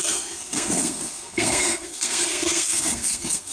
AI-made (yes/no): yes